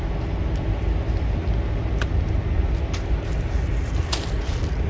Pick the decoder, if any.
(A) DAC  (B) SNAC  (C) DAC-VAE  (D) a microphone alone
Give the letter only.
D